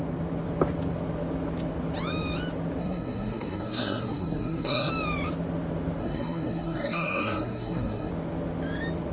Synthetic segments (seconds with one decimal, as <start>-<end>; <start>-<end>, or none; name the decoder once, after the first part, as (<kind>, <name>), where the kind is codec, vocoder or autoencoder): 2.8-4.9 (codec, SNAC); 6.0-8.1